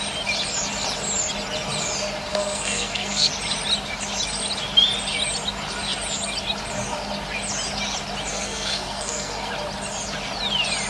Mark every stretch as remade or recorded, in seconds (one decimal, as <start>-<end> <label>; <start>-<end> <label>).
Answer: 0.0-2.3 recorded; 2.3-3.3 remade; 3.3-8.3 recorded; 8.3-9.5 remade; 9.5-10.9 recorded